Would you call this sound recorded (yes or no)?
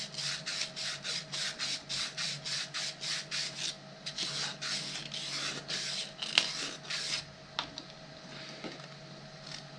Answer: yes